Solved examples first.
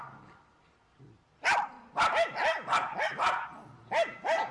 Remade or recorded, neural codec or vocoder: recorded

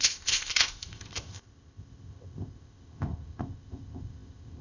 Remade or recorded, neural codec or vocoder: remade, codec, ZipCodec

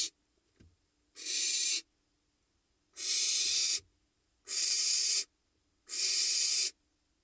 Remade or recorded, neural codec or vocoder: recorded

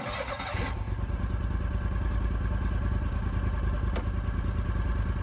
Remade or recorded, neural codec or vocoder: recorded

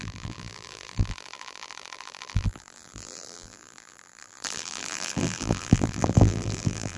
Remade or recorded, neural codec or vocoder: remade, vocoder, BigVGAN v2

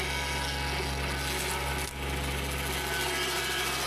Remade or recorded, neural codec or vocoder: recorded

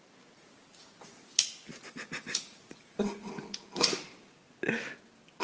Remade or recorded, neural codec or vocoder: recorded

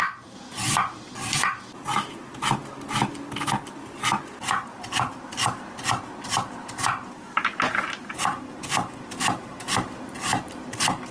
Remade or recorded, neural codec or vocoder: recorded